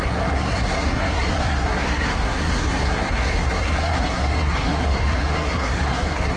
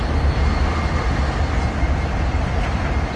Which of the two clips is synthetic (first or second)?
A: first